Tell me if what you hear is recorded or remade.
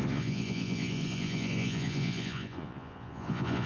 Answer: remade